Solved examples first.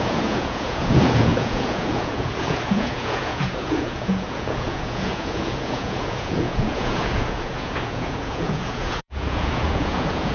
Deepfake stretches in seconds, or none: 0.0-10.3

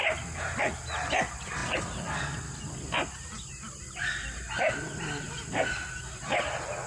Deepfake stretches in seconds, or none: none

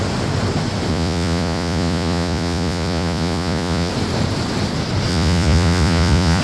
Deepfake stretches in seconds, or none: 0.9-3.9; 5.1-6.4

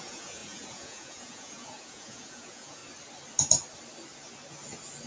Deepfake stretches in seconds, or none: 0.0-2.8

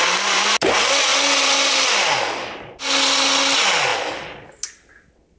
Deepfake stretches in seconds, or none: none

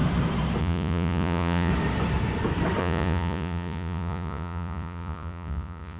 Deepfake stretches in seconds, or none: 0.6-1.7; 2.8-6.0

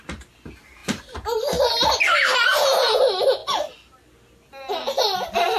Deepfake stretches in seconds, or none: 2.5-3.0

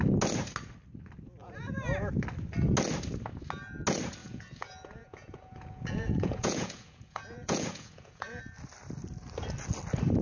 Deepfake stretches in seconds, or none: 1.4-2.1; 4.2-8.4